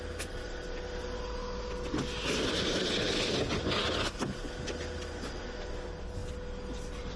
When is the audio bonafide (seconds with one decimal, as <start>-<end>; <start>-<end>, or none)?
0.0-7.2